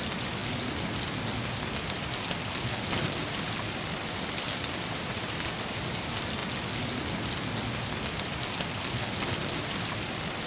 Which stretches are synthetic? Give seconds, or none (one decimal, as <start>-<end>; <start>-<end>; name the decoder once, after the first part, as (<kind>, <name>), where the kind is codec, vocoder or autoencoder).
0.0-0.4 (vocoder, BigVGAN v2); 3.7-6.4; 9.8-10.5